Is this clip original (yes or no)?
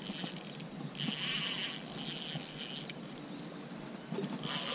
yes